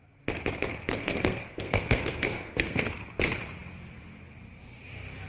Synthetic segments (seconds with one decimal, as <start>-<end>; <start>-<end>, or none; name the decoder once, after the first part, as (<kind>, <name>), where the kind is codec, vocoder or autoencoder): 0.9-2.9 (codec, SNAC)